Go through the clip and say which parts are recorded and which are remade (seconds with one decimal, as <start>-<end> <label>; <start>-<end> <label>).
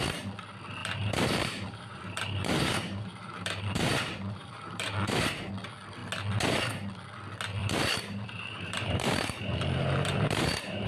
0.0-0.8 recorded; 0.8-5.5 remade; 5.5-7.6 recorded; 7.6-10.9 remade